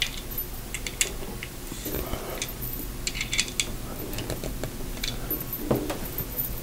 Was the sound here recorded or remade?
recorded